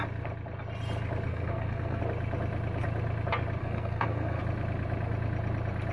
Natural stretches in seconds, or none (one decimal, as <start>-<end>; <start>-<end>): 0.0-1.3; 2.0-3.6; 4.4-5.9